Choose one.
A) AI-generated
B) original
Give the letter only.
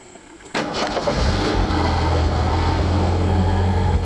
A